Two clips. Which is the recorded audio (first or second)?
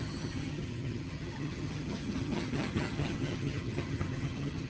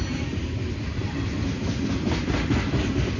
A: second